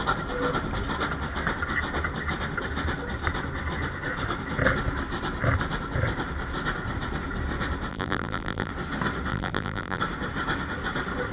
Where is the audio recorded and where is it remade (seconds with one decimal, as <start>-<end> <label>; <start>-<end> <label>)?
0.0-7.9 recorded; 7.9-8.7 remade; 8.7-9.3 recorded; 9.3-10.0 remade; 10.0-11.3 recorded